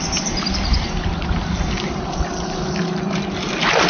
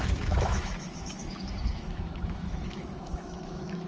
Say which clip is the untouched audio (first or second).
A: first